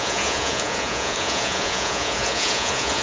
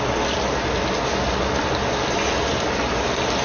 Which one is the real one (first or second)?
second